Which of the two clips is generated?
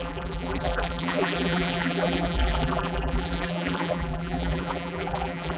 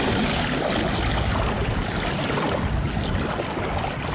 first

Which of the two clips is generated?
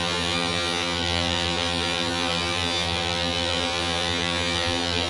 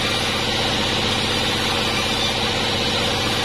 first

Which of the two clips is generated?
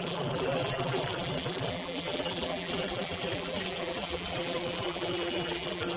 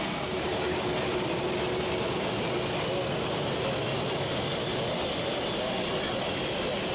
first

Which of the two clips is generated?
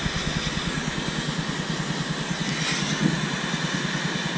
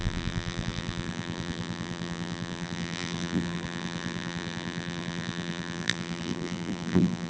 second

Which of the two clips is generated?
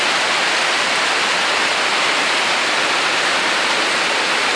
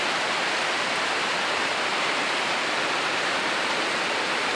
second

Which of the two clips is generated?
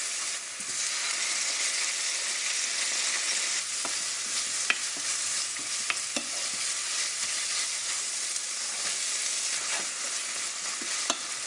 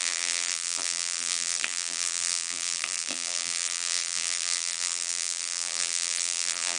second